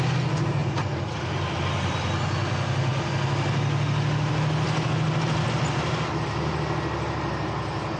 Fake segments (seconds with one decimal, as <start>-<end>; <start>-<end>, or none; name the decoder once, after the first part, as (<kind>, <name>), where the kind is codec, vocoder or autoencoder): none